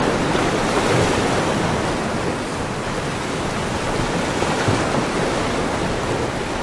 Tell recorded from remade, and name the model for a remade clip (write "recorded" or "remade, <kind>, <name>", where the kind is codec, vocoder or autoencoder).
recorded